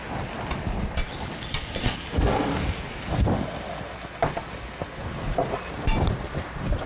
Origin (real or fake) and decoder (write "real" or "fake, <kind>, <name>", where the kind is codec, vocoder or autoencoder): real